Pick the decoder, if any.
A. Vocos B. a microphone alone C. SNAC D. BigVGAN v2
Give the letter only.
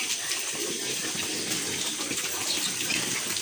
B